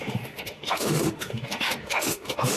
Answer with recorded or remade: remade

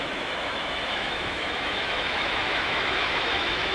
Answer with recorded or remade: remade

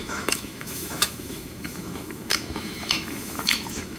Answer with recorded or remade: remade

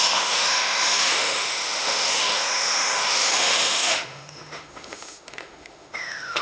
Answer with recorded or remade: remade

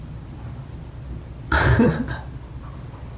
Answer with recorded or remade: recorded